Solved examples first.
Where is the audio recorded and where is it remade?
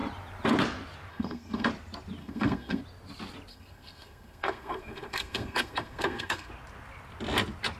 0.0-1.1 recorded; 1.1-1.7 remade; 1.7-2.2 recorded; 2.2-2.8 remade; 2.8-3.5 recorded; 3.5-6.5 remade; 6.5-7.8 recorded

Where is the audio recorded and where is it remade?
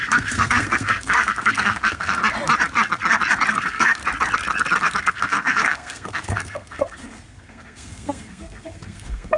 0.0-2.2 remade; 2.2-3.5 recorded; 3.5-4.0 remade; 4.0-4.8 recorded; 4.8-9.4 remade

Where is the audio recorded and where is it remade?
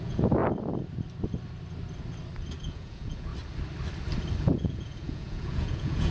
0.0-0.4 remade; 0.4-2.6 recorded; 2.6-3.3 remade; 3.3-4.4 recorded; 4.4-6.1 remade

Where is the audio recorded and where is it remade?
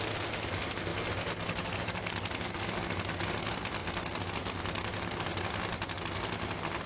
0.0-6.9 recorded